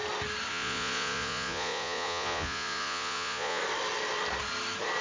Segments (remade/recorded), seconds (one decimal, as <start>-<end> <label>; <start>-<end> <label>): 0.0-0.5 recorded; 0.5-3.6 remade; 3.6-5.0 recorded

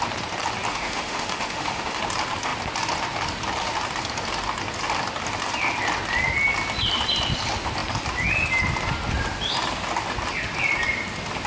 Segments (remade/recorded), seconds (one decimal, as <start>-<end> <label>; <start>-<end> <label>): 0.0-0.7 recorded; 0.7-2.0 remade; 2.0-11.5 recorded

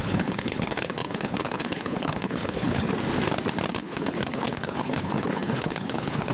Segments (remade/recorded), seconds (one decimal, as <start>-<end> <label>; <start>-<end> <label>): 0.0-2.9 remade; 2.9-3.7 recorded; 3.7-6.3 remade

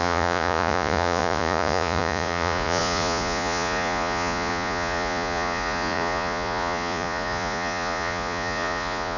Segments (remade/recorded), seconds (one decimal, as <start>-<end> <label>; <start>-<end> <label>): 0.0-9.2 remade

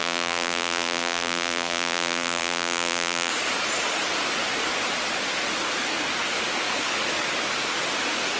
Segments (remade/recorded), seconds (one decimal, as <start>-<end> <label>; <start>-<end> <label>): 0.0-3.3 remade; 3.3-8.4 recorded

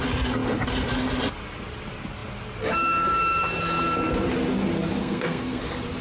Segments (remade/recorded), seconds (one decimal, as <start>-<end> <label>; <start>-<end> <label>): 0.0-5.0 recorded; 5.0-5.6 remade; 5.6-6.0 recorded

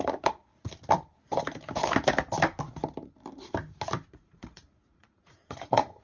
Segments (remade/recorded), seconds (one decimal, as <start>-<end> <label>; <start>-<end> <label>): 0.0-0.5 remade; 0.5-4.1 recorded; 4.1-6.0 remade

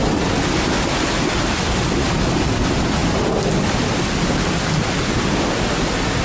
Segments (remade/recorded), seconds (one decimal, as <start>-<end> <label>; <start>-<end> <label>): 0.0-6.2 recorded